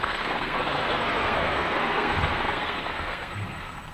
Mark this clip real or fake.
fake